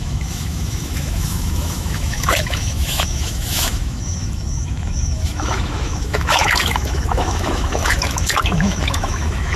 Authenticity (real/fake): fake